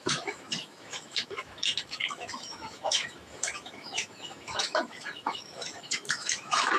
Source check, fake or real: fake